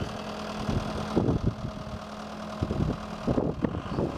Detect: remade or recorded recorded